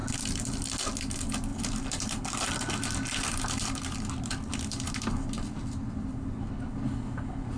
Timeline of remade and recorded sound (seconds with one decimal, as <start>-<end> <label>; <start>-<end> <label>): 0.0-7.6 recorded